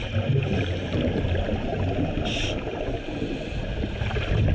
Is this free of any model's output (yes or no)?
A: yes